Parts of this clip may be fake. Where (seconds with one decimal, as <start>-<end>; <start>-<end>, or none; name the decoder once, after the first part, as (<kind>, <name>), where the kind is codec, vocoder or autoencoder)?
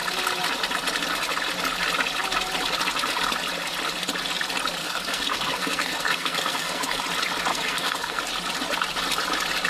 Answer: 4.8-7.0 (codec, SNAC); 7.5-8.2